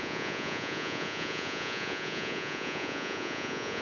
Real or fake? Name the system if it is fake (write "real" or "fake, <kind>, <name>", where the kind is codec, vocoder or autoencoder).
fake, vocoder, Vocos